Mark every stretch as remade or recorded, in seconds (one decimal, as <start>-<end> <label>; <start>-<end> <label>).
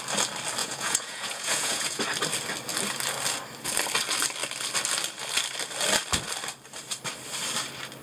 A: 0.0-0.6 recorded; 0.6-2.0 remade; 2.0-8.0 recorded